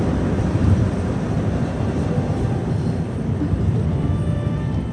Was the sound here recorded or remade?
remade